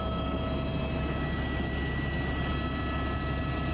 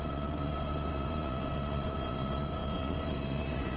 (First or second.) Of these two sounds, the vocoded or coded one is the second